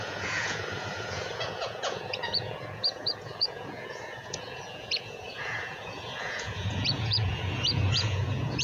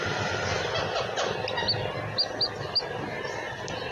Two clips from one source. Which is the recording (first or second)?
second